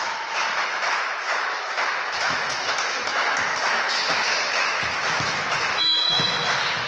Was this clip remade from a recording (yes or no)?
yes